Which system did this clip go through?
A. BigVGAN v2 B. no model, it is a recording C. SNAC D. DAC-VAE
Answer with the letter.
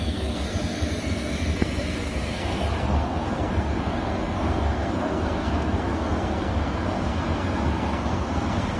C